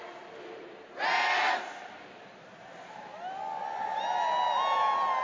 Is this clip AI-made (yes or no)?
no